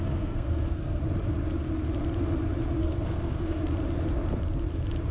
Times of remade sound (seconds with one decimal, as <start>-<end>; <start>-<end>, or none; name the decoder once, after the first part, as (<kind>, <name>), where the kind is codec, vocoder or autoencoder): 0.0-1.0 (codec, SNAC); 2.8-3.6